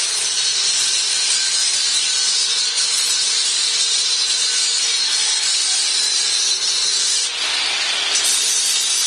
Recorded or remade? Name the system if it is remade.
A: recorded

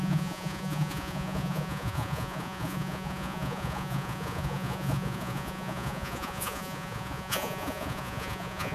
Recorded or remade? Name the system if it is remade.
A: remade, vocoder, Vocos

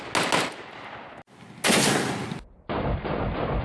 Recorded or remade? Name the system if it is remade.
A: recorded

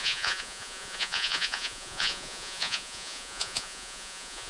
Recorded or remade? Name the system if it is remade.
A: remade, vocoder, Vocos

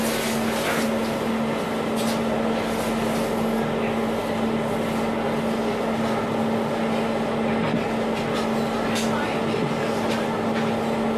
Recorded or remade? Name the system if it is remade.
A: recorded